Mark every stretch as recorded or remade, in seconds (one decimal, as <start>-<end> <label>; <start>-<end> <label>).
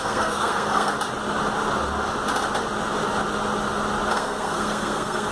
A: 0.0-0.9 remade; 0.9-4.1 recorded; 4.1-5.3 remade